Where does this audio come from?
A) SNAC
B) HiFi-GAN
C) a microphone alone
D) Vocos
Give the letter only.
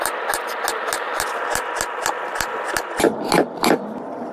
C